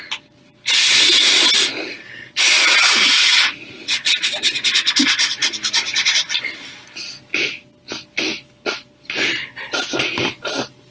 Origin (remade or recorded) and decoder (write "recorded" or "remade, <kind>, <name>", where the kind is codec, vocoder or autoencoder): recorded